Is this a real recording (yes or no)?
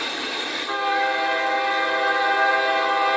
yes